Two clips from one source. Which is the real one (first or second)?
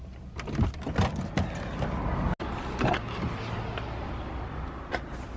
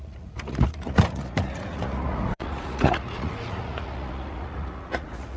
first